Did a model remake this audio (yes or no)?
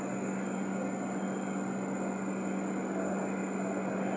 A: no